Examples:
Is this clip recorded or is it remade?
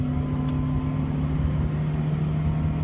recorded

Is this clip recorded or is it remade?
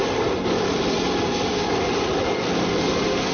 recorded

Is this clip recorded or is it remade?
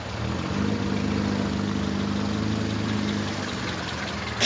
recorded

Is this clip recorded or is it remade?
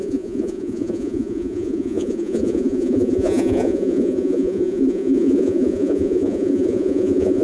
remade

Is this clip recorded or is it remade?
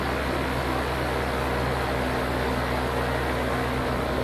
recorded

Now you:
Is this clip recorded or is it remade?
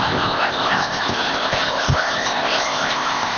remade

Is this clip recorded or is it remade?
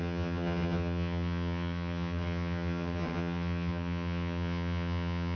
remade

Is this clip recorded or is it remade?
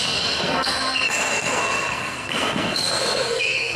remade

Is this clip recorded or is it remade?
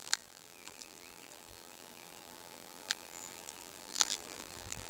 remade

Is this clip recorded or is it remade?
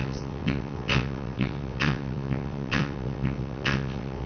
remade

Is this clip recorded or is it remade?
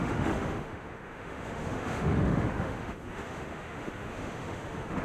remade